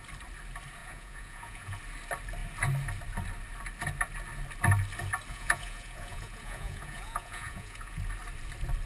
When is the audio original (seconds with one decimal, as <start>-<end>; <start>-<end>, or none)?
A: 0.0-0.8; 1.8-5.3; 8.0-8.9